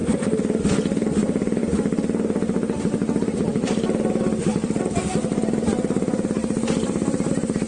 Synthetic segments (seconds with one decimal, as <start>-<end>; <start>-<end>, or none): 3.6-4.8; 6.4-7.3